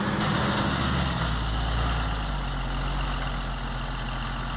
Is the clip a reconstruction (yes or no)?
no